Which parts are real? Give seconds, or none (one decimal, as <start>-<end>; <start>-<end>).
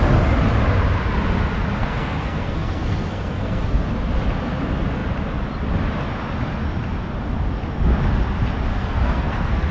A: 0.0-1.8; 3.9-8.7